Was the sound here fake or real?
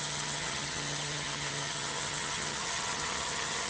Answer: fake